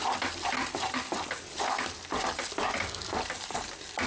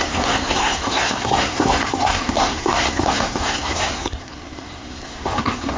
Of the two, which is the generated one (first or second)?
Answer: second